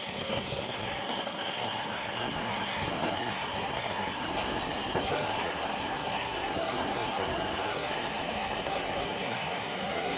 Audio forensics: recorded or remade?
remade